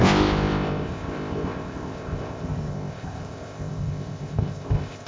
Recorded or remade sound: remade